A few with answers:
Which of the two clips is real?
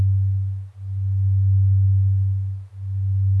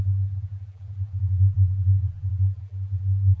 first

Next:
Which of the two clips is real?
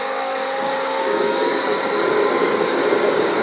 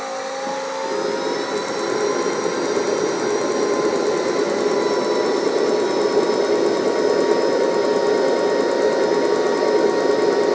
second